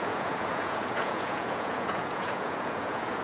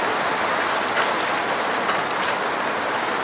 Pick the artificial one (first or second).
first